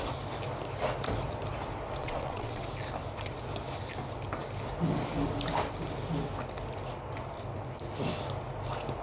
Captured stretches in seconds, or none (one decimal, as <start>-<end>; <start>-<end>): 0.0-2.0; 2.6-9.0